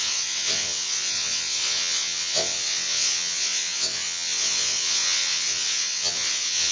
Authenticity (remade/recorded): remade